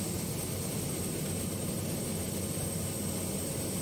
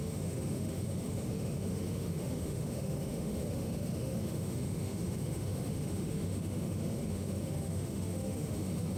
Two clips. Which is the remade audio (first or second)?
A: second